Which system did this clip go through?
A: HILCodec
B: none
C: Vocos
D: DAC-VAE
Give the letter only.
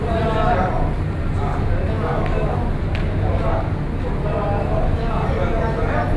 B